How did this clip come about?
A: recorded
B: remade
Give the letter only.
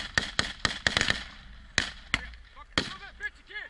A